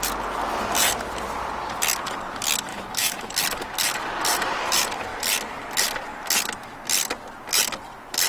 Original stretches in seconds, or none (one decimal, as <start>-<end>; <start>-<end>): 0.0-2.7; 3.3-8.3